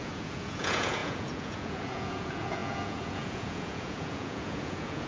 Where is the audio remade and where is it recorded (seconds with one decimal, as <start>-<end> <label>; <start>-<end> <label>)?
0.0-5.1 remade